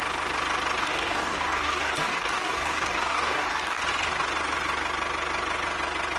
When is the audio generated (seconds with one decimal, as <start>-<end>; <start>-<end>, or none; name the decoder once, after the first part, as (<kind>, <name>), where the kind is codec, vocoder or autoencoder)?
0.8-3.8 (codec, DAC)